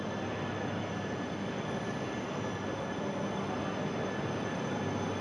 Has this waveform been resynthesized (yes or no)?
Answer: no